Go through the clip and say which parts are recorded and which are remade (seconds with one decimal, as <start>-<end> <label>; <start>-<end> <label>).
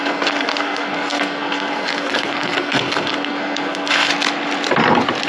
0.0-4.1 remade; 4.1-5.3 recorded